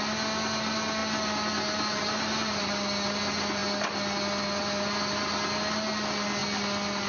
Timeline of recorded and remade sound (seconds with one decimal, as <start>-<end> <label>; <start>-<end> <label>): 0.0-7.1 recorded

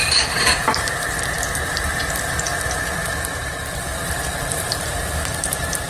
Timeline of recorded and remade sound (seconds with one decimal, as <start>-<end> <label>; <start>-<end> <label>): 0.0-1.2 remade; 1.2-5.9 recorded

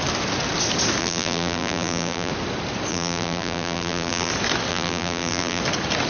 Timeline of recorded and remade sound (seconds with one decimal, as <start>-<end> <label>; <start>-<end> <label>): 0.0-1.0 recorded; 1.0-2.3 remade; 2.3-2.9 recorded; 2.9-4.3 remade; 4.3-4.7 recorded; 4.7-5.6 remade; 5.6-6.1 recorded

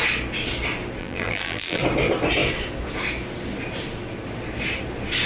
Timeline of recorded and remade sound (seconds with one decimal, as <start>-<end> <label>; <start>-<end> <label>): 0.0-1.0 recorded; 1.0-1.8 remade; 1.8-5.3 recorded

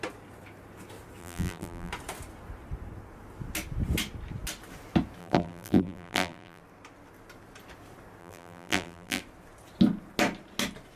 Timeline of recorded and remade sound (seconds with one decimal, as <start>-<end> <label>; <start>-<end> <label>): 0.0-1.2 recorded; 1.2-1.9 remade; 1.9-5.2 recorded; 5.2-6.6 remade; 6.6-8.2 recorded; 8.2-9.2 remade; 9.2-11.0 recorded